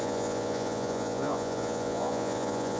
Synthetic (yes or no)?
yes